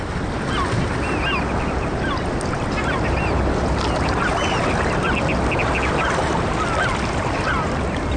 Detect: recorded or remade recorded